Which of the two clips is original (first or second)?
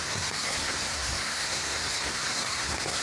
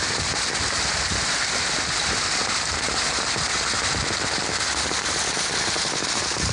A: second